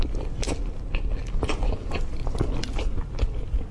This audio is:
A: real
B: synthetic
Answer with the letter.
A